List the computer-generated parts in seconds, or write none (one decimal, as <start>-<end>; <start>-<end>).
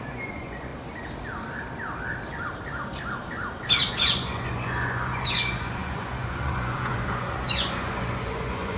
0.0-0.7; 3.9-8.8